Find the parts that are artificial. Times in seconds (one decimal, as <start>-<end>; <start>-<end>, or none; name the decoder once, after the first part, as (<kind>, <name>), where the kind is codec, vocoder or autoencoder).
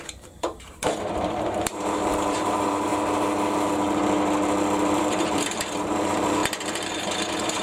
0.0-2.9 (vocoder, BigVGAN v2); 5.0-6.4; 6.9-7.6